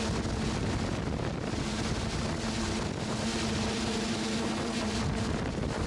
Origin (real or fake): real